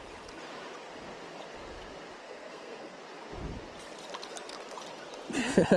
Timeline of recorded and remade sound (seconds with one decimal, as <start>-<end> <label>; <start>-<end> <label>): 0.0-2.2 recorded; 2.2-3.0 remade; 3.0-5.8 recorded